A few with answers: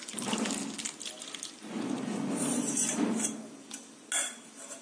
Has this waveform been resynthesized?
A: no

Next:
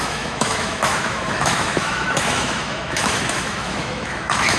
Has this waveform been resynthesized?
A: yes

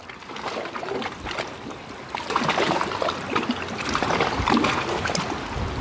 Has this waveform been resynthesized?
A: no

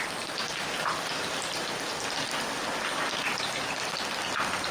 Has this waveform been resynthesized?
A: no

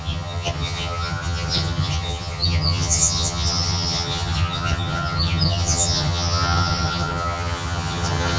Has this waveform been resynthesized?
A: yes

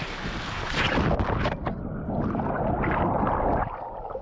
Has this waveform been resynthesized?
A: no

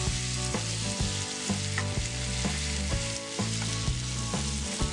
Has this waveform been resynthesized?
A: no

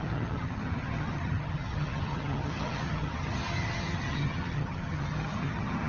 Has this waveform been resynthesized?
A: yes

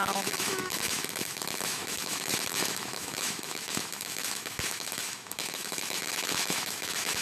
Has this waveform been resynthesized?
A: yes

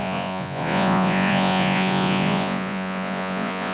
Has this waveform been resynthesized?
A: yes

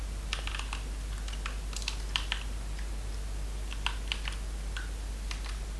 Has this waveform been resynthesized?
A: no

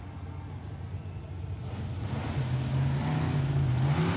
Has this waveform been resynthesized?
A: no